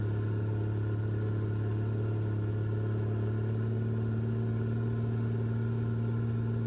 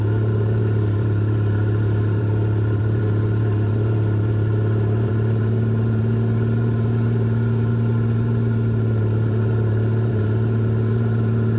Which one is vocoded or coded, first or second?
second